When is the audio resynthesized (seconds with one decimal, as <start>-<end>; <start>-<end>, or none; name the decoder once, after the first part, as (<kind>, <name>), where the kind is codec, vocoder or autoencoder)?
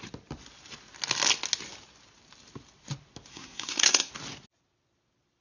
3.3-4.1 (codec, SNAC)